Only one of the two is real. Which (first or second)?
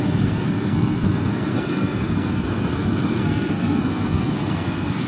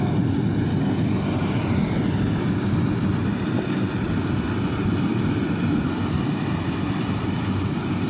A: second